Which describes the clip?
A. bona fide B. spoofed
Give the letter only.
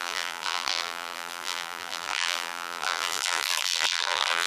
B